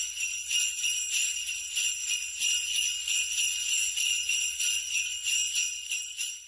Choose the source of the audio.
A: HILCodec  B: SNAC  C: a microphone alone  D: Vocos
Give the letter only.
C